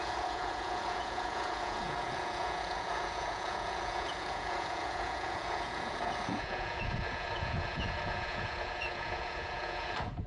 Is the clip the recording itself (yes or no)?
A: no